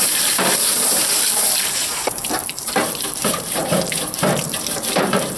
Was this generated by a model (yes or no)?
yes